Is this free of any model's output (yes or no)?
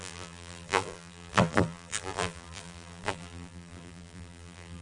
no